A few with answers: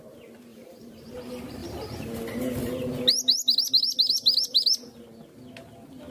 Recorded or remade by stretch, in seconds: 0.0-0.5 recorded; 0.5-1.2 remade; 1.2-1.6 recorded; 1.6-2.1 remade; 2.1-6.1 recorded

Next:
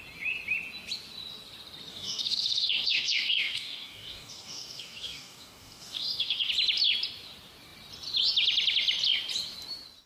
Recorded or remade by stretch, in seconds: 0.0-1.9 recorded; 1.9-6.5 remade; 6.5-10.1 recorded

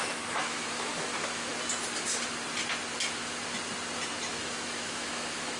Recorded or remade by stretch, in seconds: 0.0-1.5 remade; 1.5-4.3 recorded; 4.3-5.6 remade

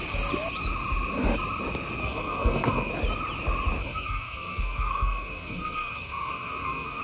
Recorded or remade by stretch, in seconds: 0.0-2.0 recorded; 2.0-2.9 remade; 2.9-3.8 recorded; 3.8-7.0 remade

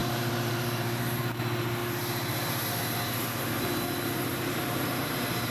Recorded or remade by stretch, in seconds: 0.0-1.2 remade; 1.2-4.3 recorded; 4.3-5.5 remade

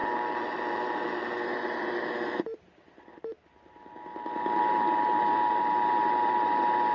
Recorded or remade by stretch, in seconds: 0.0-0.6 recorded; 0.6-6.9 remade